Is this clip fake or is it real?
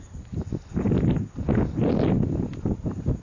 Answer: real